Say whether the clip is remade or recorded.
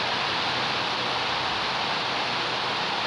recorded